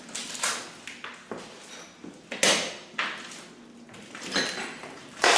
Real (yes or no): yes